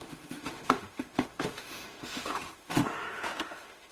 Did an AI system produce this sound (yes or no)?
yes